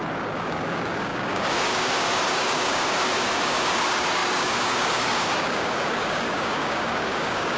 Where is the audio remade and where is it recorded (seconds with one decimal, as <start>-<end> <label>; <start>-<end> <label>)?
0.0-7.6 remade